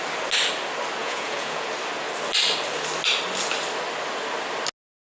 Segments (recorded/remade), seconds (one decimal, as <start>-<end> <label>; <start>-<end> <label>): 0.0-1.0 recorded; 1.0-1.7 remade; 1.7-5.1 recorded